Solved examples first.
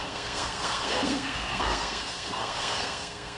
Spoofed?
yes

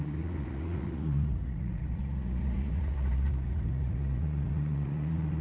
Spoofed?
yes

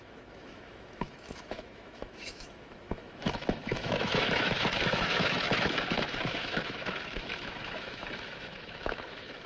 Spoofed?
yes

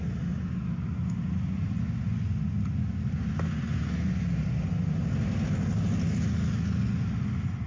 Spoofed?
no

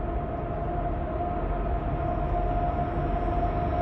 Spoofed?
no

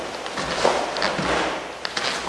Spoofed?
no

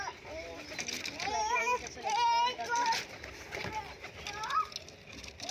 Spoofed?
no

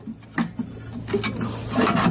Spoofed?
no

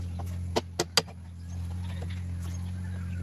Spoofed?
no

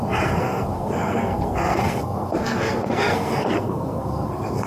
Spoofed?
yes